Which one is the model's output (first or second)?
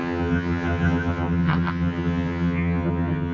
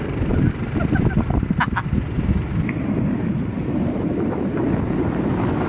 first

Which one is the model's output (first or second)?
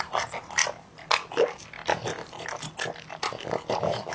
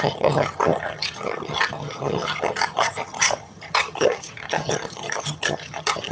second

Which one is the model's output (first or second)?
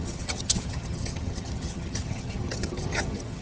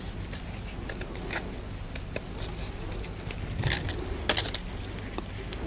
first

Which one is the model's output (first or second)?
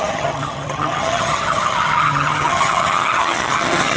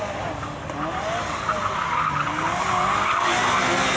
first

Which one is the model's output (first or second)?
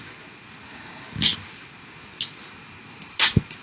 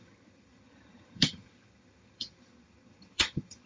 second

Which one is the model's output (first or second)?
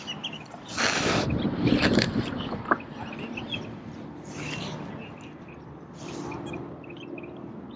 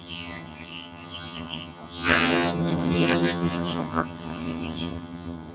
second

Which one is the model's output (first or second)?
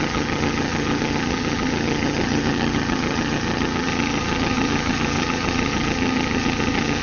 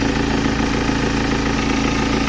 first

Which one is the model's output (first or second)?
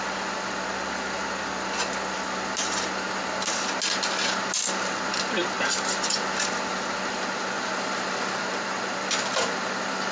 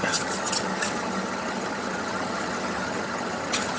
second